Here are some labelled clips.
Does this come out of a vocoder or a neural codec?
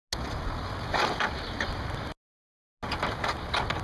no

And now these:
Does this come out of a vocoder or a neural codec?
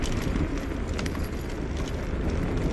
no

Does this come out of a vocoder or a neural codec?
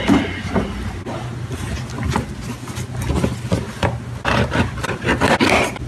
no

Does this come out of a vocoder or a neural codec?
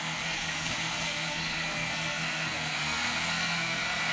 yes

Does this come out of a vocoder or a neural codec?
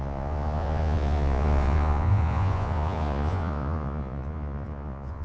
yes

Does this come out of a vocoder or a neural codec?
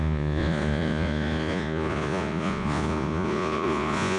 yes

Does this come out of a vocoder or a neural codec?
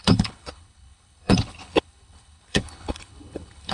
yes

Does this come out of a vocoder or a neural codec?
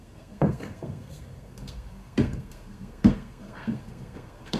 yes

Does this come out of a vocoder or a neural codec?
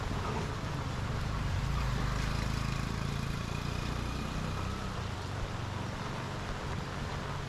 no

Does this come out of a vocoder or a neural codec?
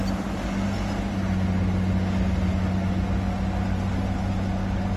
no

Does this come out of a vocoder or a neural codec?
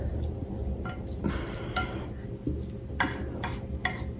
no